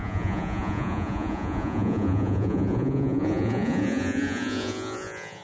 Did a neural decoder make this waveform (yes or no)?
yes